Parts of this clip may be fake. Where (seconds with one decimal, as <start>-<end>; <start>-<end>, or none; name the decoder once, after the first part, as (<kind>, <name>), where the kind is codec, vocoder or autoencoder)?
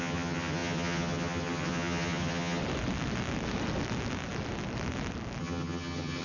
0.0-2.6 (vocoder, HiFi-GAN); 5.4-6.2